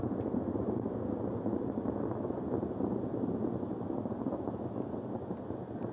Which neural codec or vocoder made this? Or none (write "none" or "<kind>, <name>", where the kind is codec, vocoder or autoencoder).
none